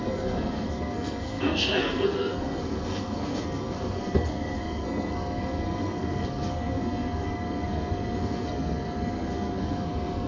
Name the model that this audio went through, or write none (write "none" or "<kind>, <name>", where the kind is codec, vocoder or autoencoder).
codec, SNAC